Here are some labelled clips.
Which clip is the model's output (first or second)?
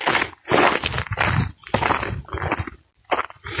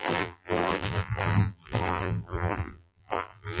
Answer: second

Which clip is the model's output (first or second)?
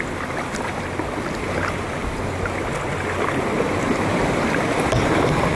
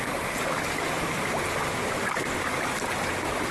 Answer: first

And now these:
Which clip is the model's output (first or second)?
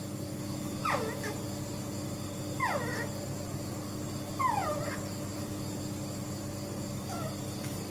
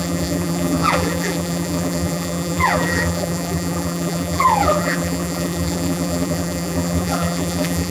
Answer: second